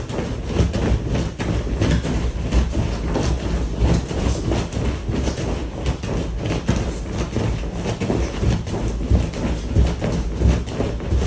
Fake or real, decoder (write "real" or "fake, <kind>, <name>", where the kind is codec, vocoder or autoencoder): real